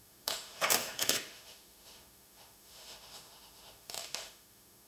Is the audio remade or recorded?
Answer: remade